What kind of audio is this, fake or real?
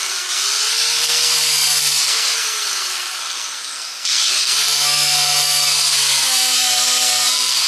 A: fake